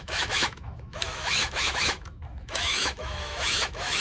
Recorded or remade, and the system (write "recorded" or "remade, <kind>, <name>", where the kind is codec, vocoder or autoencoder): remade, autoencoder, DAC-VAE